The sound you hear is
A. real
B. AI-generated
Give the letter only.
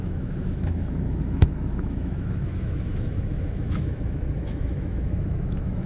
B